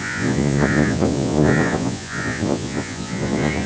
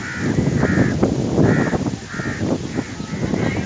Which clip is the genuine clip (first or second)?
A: second